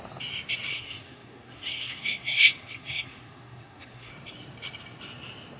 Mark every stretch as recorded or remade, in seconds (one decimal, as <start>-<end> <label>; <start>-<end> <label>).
0.0-0.7 recorded; 0.7-4.1 remade; 4.1-5.6 recorded